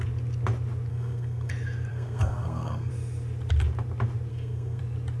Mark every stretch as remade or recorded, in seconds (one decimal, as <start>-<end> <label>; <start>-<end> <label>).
0.0-0.9 recorded; 0.9-1.5 remade; 1.5-1.9 recorded; 1.9-2.9 remade; 2.9-4.3 recorded; 4.3-4.8 remade; 4.8-5.2 recorded